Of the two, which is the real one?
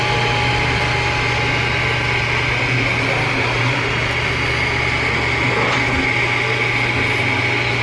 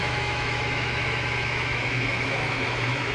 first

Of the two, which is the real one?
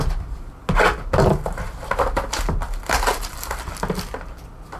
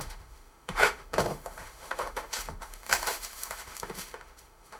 first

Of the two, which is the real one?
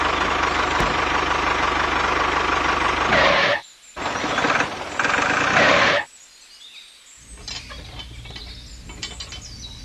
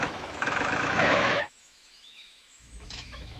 first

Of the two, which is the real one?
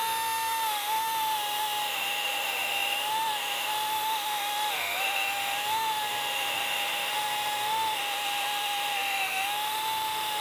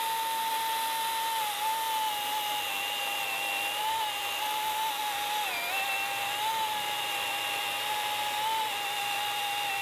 second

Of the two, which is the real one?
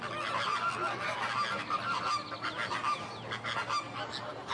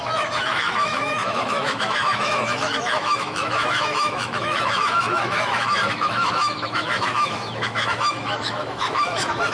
first